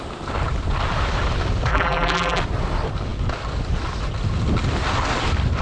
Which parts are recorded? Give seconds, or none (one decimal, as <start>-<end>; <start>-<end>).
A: 0.0-1.7; 2.4-5.6

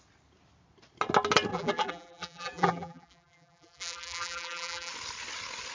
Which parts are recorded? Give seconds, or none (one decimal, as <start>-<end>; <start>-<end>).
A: 0.0-1.5; 4.9-5.7

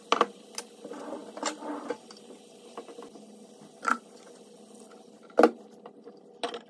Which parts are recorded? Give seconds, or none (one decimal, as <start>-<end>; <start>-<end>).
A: 0.0-6.7

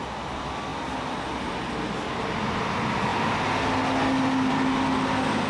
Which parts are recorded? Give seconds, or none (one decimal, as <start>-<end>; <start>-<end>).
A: 0.0-5.5

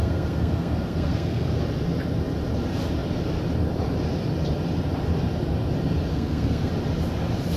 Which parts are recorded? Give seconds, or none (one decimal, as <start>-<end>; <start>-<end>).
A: 1.6-6.1; 6.7-7.6

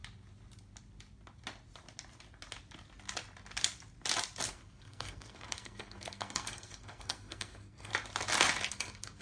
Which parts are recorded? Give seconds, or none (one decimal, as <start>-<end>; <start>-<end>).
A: 0.0-4.5; 7.9-8.7

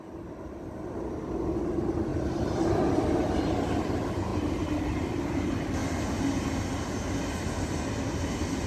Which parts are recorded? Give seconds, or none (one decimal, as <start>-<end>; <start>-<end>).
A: 0.0-8.7

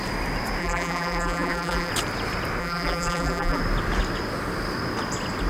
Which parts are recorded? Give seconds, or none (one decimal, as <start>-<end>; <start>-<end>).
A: 0.0-0.6; 1.9-2.6; 3.6-5.5